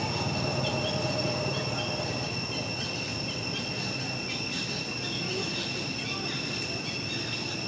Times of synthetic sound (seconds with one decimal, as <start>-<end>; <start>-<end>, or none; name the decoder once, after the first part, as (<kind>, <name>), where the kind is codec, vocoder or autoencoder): none